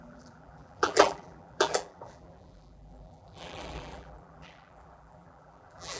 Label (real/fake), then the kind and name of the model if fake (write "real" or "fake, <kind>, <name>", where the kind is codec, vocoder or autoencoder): fake, vocoder, BigVGAN v2